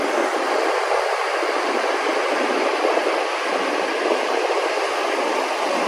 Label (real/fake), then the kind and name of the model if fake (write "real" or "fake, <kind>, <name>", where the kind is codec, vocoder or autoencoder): fake, vocoder, BigVGAN v2